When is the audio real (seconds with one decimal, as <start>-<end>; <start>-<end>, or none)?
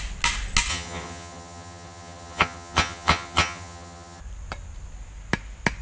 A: 0.0-0.7; 4.2-5.8